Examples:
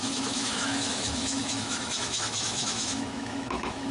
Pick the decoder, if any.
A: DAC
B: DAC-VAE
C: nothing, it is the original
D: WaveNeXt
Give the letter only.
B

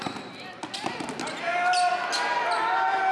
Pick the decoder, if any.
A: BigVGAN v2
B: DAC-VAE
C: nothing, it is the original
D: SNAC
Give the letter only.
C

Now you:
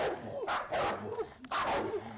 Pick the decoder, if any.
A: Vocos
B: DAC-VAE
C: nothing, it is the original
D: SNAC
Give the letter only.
C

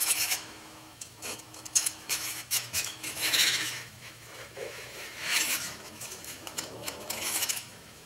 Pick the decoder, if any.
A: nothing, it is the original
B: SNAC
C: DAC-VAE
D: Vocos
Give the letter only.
C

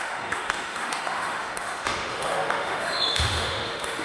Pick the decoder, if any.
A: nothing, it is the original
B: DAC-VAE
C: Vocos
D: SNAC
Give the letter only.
B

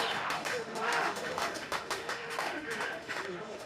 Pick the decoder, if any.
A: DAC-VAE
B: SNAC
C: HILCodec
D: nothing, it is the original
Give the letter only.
A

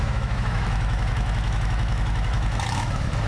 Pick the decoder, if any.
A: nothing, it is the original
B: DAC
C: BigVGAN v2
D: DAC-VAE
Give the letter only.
D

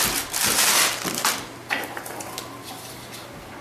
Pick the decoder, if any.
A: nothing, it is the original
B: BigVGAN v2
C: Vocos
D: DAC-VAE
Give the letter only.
A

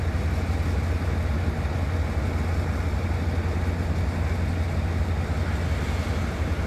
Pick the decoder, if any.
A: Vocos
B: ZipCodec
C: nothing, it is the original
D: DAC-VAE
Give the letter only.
C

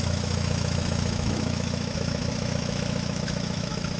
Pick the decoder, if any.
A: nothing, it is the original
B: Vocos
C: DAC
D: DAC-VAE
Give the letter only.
D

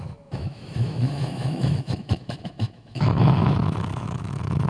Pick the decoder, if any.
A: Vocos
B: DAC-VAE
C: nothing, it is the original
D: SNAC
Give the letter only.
B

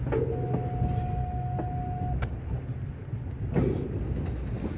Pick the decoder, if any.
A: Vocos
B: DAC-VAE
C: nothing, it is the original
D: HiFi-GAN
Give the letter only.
C